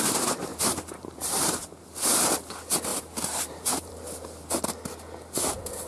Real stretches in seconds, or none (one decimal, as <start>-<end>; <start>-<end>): 0.0-0.5; 1.6-2.9; 3.9-5.9